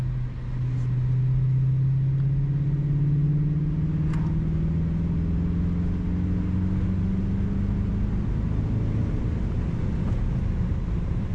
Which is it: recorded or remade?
recorded